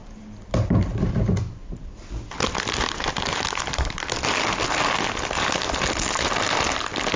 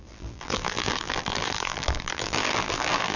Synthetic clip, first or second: second